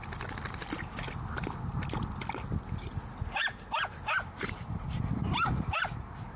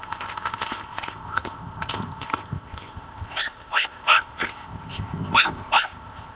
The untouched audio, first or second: first